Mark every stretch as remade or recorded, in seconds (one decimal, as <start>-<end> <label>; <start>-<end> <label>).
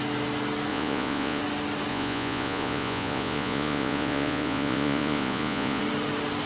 0.0-0.7 recorded; 0.7-1.4 remade; 1.4-1.9 recorded; 1.9-5.8 remade; 5.8-6.5 recorded